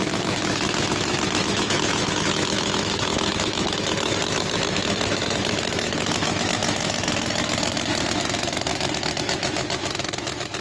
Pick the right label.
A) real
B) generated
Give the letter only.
B